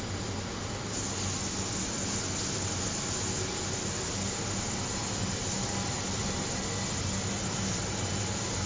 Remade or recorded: recorded